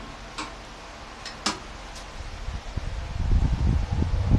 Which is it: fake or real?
real